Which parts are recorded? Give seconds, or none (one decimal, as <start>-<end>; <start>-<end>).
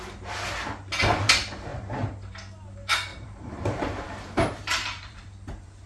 0.0-3.1; 5.2-5.9